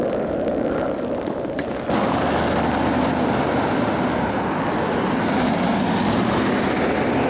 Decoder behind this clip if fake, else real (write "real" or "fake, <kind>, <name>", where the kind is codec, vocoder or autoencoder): real